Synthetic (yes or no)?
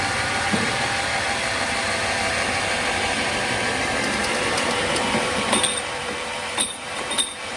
yes